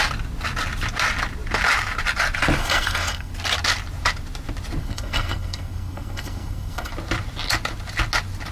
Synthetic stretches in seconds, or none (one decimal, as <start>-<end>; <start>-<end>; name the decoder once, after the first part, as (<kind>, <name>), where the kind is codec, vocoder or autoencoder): 2.6-3.3 (codec, SNAC); 4.8-6.9